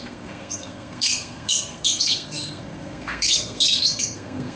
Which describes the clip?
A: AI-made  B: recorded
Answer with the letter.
A